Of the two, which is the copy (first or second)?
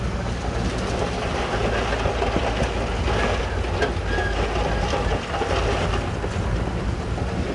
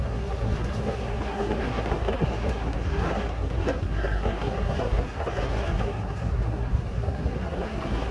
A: second